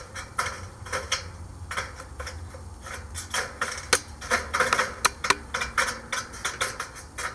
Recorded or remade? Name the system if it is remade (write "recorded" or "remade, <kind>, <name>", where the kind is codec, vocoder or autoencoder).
recorded